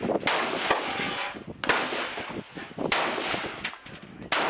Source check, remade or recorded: recorded